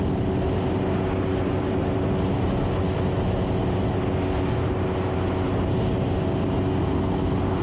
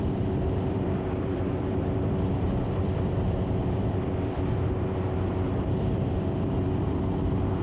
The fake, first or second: second